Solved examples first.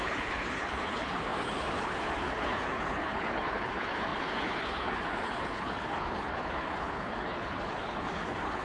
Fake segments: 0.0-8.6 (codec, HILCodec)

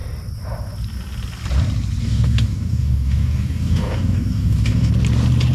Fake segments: 2.0-4.9 (codec, DAC)

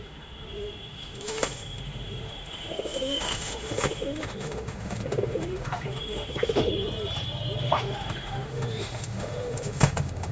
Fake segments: 0.0-6.7 (autoencoder, DAC-VAE); 7.6-10.3

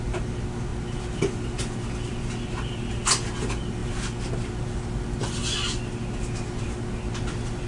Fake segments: none

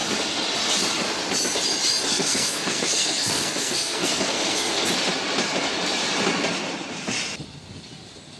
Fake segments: 2.1-4.9 (codec, SNAC)